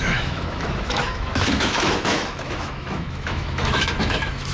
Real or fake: fake